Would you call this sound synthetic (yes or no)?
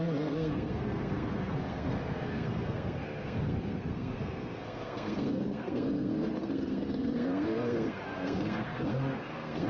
yes